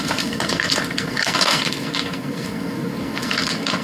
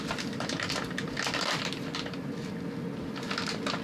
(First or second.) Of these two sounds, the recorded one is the second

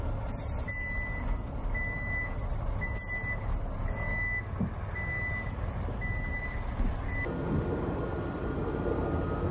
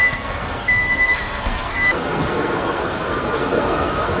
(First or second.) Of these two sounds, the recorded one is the first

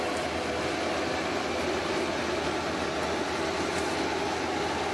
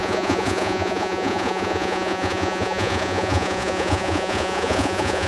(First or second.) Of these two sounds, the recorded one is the first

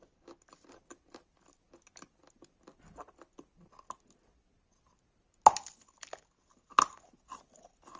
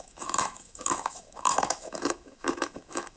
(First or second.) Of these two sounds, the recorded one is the first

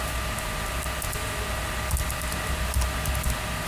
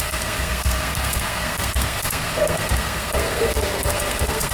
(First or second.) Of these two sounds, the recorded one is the first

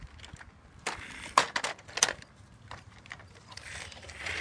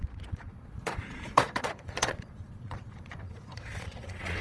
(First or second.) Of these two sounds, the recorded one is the first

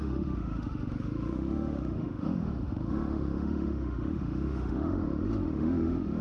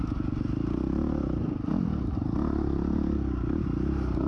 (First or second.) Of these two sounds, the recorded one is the second